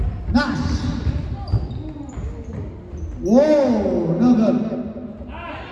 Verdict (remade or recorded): recorded